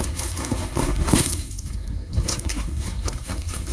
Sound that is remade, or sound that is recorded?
remade